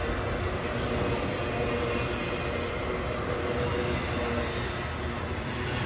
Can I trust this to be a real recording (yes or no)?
yes